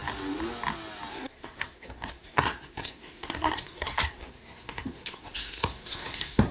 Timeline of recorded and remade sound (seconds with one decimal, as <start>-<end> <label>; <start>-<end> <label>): 0.0-1.1 recorded; 1.1-6.5 remade